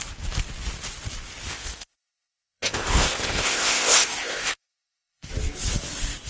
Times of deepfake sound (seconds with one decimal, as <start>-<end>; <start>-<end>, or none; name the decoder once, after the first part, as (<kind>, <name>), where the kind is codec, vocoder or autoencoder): 1.5-5.3 (codec, ZipCodec)